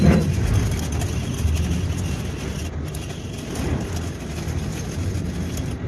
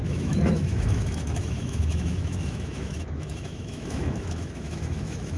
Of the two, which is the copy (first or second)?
second